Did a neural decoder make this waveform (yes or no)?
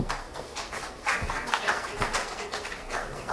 yes